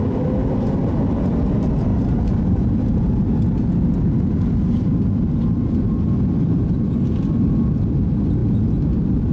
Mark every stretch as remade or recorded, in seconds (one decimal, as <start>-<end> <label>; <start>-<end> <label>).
0.0-1.9 recorded; 1.9-3.2 remade; 3.2-9.3 recorded